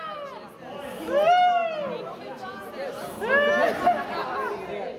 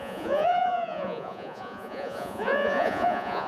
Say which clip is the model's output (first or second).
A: second